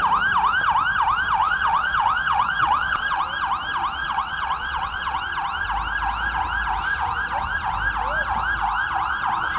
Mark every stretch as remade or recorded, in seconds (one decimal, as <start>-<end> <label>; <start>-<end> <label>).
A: 0.0-1.4 recorded; 1.4-3.2 remade; 3.2-4.0 recorded; 4.0-5.2 remade; 5.2-9.6 recorded